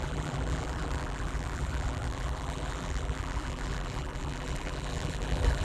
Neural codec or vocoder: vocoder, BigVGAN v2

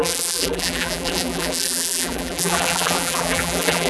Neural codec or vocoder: vocoder, BigVGAN v2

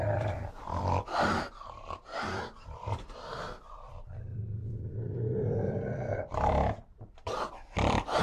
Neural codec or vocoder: vocoder, BigVGAN v2